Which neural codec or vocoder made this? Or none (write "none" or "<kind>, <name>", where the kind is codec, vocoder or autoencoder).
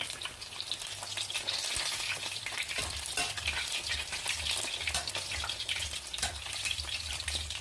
none